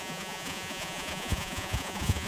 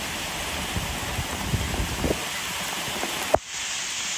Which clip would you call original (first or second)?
second